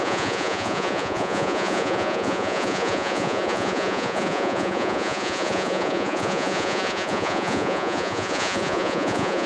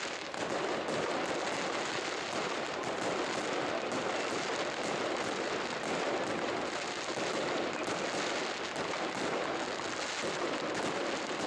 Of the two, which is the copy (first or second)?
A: first